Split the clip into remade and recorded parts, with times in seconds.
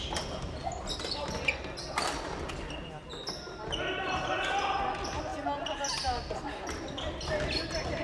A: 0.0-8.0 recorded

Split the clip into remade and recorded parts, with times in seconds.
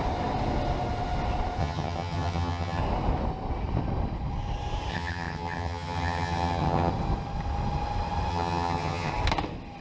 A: 0.0-1.6 recorded; 1.6-2.8 remade; 2.8-4.9 recorded; 4.9-6.9 remade; 6.9-8.3 recorded; 8.3-9.1 remade; 9.1-9.8 recorded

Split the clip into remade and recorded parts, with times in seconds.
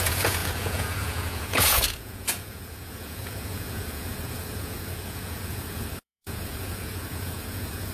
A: 0.0-7.9 remade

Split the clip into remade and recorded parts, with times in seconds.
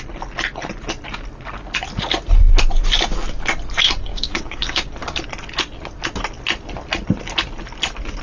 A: 0.0-4.1 recorded; 4.1-4.9 remade; 4.9-8.2 recorded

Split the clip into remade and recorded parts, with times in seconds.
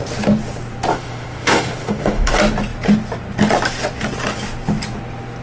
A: 0.0-0.9 recorded; 0.9-2.3 remade; 2.3-5.4 recorded